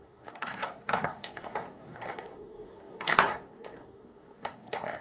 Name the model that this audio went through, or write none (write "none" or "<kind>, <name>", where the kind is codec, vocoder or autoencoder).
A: codec, SNAC